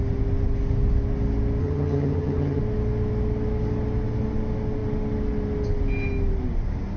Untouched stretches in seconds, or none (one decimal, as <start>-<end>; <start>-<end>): 0.0-1.6; 2.6-7.0